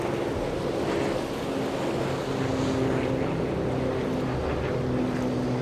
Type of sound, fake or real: real